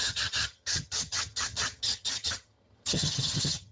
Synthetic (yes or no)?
yes